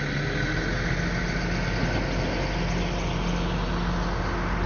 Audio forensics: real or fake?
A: real